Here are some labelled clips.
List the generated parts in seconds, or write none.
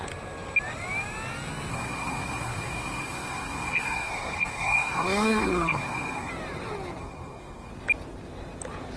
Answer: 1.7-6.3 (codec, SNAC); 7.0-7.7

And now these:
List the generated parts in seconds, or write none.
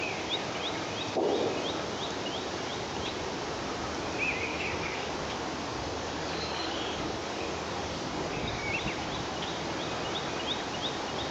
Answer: 4.5-5.1 (codec, DAC); 5.7-8.7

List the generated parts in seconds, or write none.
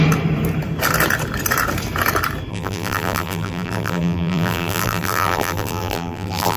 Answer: 2.5-6.6 (vocoder, BigVGAN v2)